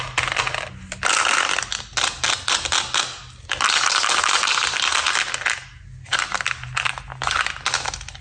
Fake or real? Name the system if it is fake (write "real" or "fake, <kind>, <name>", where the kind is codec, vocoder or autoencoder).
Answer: real